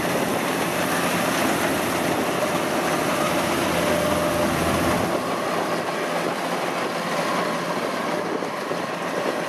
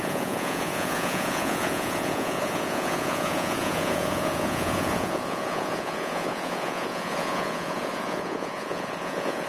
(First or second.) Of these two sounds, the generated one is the second